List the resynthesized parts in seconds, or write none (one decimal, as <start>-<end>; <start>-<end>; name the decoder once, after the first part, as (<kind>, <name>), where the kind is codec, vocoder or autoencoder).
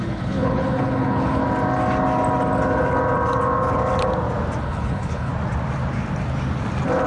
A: 0.0-1.4 (codec, HILCodec); 4.6-5.3